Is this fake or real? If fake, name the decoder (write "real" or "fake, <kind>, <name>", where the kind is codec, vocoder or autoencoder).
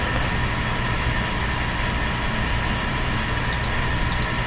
real